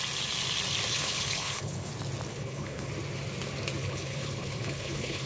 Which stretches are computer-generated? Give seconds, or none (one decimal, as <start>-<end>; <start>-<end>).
0.9-1.9; 2.3-2.9; 3.8-5.3